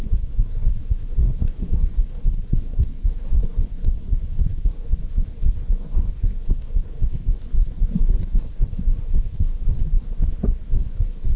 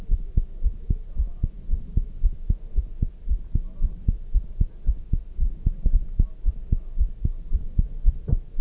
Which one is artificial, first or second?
first